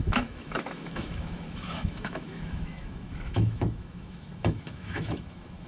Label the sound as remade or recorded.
remade